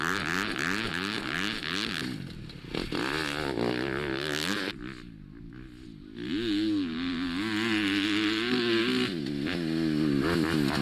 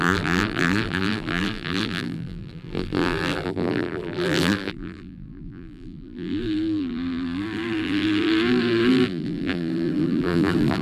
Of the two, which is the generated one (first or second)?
second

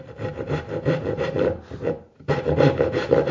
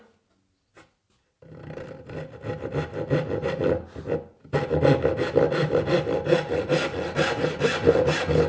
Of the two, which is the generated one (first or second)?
first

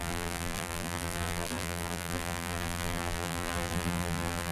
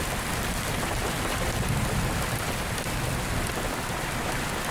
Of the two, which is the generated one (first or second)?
first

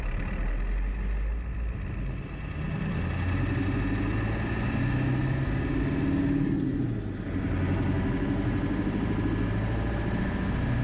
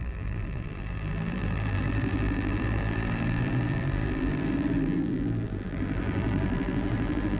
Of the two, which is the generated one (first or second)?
second